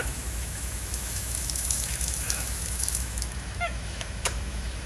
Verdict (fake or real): fake